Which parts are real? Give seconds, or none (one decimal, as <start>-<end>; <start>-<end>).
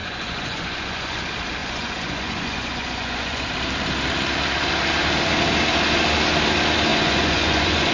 1.2-1.6; 3.5-6.9